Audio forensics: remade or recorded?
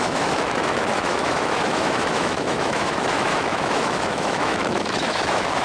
remade